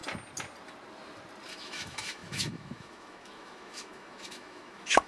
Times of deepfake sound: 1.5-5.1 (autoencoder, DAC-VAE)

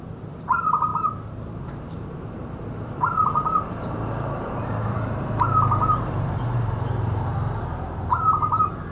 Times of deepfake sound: 0.0-0.9 (vocoder, BigVGAN v2); 1.6-8.9

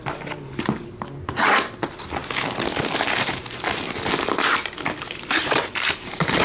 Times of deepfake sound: 5.4-6.4 (vocoder, BigVGAN v2)

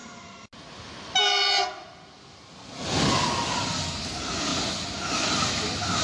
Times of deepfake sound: none

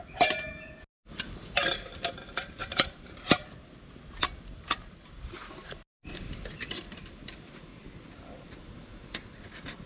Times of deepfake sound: 2.6-3.2 (vocoder, BigVGAN v2); 8.9-9.4

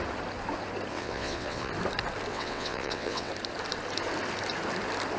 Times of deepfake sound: 0.9-1.7 (vocoder, WaveNeXt); 2.3-3.3